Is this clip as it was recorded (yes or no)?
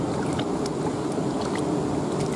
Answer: yes